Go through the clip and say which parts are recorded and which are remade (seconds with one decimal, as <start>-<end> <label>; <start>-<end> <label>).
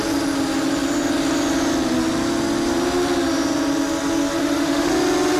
0.0-4.4 recorded; 4.4-4.9 remade; 4.9-5.4 recorded